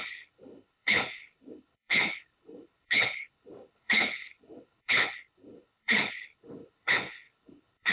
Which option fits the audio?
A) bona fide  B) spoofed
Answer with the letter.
B